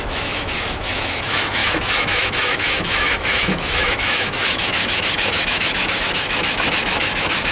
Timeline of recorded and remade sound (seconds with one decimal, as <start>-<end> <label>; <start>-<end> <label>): 0.0-7.5 remade